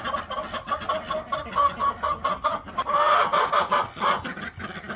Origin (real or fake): real